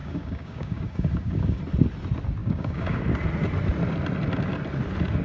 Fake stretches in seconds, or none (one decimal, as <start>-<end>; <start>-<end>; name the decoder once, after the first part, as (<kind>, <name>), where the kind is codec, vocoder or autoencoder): 0.0-1.6 (codec, DAC); 2.4-3.0